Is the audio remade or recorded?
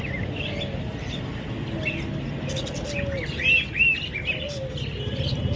recorded